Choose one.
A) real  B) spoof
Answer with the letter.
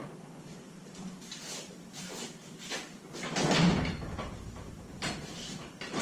B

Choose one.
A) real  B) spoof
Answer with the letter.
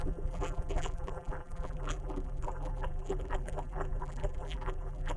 B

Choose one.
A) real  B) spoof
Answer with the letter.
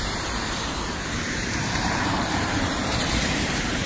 B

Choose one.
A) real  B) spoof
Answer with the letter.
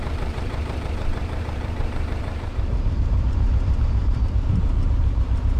B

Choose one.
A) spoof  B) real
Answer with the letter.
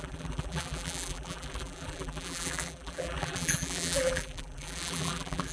A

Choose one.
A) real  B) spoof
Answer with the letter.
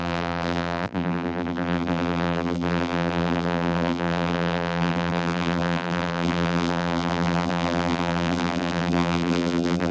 B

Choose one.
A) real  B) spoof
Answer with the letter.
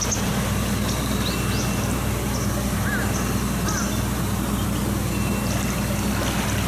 A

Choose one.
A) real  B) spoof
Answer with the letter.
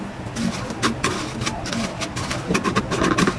A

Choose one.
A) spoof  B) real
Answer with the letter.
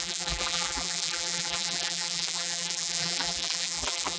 A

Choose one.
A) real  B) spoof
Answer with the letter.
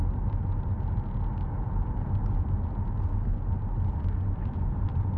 A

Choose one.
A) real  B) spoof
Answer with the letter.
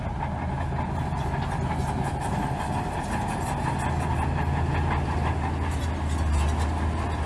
A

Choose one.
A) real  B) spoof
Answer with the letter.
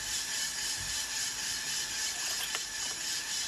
B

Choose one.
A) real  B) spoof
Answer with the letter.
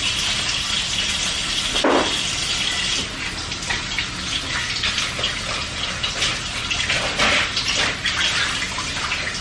A